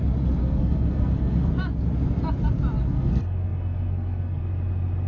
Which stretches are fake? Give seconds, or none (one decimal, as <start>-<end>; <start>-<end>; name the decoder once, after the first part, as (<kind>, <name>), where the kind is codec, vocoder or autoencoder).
0.4-1.5 (codec, SNAC); 2.8-4.4